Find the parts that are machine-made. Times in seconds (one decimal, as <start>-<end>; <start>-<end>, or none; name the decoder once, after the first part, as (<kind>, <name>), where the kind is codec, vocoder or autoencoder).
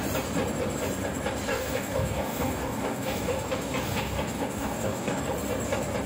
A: 1.5-5.2 (codec, DAC)